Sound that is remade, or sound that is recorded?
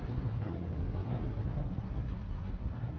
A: remade